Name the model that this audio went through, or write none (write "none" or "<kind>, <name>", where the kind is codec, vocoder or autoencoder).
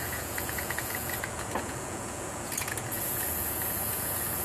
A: vocoder, Vocos